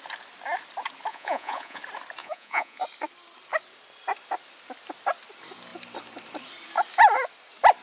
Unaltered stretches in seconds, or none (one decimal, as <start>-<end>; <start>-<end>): 0.0-1.1; 1.8-2.2; 2.8-7.8